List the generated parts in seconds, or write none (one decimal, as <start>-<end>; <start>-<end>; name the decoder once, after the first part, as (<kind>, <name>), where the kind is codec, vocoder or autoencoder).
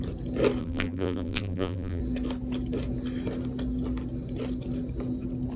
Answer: 0.6-2.0 (vocoder, BigVGAN v2)